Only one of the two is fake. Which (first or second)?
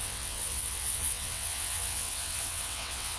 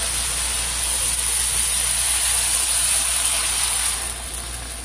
first